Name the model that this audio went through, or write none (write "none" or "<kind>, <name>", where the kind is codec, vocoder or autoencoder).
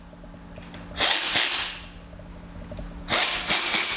none